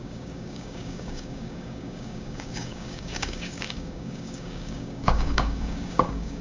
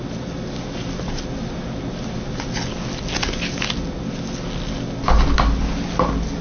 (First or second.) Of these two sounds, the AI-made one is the first